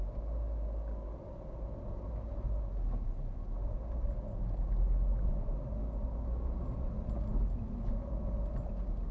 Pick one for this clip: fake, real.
real